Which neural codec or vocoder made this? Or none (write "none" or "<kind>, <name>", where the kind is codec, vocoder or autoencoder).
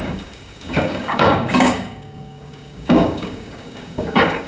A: codec, DAC